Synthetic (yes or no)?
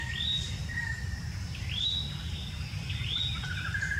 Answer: no